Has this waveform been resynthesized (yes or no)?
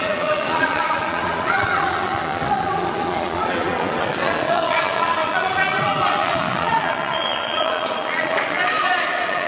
yes